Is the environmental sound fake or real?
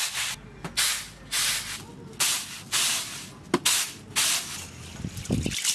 real